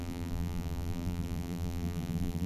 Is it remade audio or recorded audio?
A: remade